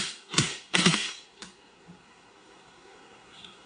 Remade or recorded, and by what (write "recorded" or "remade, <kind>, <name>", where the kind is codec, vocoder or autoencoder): remade, codec, SNAC